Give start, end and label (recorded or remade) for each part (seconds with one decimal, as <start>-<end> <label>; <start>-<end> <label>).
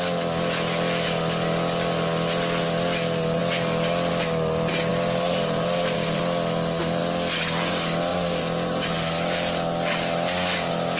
0.0-4.9 recorded; 4.9-6.2 remade; 6.2-8.1 recorded; 8.1-8.9 remade; 8.9-11.0 recorded